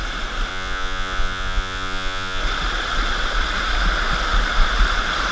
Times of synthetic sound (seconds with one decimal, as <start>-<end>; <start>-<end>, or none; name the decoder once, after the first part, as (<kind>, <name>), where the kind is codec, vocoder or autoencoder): 0.5-2.4 (vocoder, Vocos)